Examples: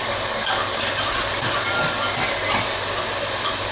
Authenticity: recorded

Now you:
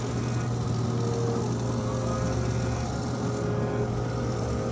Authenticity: recorded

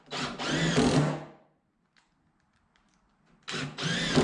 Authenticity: recorded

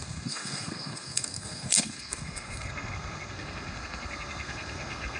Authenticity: remade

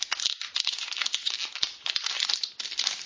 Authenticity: recorded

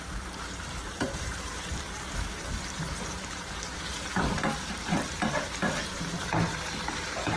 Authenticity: remade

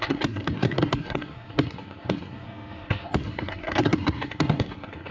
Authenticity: remade